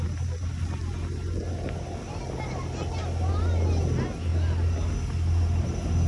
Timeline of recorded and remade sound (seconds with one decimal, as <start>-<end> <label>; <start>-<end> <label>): 0.0-6.1 recorded